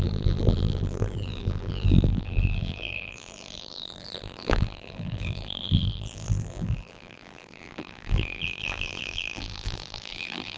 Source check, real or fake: fake